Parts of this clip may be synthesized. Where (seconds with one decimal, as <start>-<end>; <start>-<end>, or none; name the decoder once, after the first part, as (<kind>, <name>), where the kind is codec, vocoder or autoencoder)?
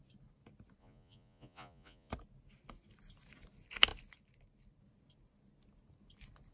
0.8-2.1 (vocoder, Vocos)